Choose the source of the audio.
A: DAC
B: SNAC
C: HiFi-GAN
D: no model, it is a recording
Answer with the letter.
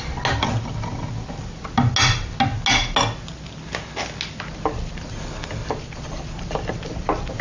D